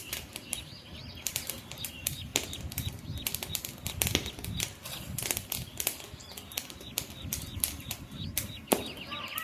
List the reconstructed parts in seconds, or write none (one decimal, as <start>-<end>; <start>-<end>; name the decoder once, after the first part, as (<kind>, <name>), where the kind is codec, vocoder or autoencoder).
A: none